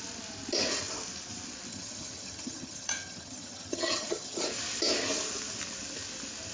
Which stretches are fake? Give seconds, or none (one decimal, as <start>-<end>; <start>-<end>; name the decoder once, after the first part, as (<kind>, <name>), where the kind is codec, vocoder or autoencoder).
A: 1.7-4.4 (vocoder, HiFi-GAN)